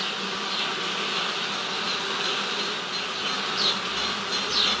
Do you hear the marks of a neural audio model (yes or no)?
no